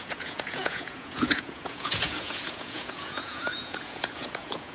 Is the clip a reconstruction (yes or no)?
yes